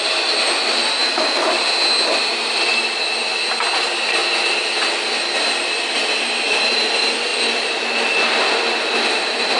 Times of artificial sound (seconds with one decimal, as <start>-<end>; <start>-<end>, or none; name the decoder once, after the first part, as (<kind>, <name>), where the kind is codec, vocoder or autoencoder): 0.0-1.0 (vocoder, BigVGAN v2); 2.1-2.7; 3.8-4.2; 6.5-9.6